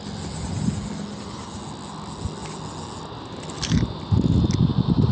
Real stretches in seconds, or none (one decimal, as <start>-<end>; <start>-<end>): 0.0-5.1